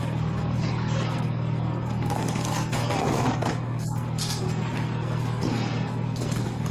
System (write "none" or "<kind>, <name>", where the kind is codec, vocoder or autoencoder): codec, SNAC